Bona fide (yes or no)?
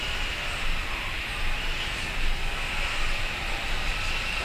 yes